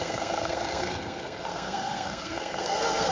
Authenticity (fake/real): fake